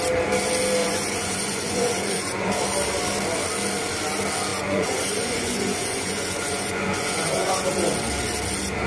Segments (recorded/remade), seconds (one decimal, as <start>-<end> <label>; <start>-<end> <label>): 0.0-0.8 recorded; 0.8-2.5 remade; 2.5-4.5 recorded; 4.5-7.7 remade; 7.7-8.9 recorded